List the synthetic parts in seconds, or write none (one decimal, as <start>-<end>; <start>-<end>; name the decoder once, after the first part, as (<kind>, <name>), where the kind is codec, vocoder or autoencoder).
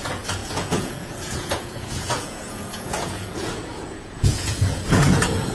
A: 0.0-5.5 (vocoder, Vocos)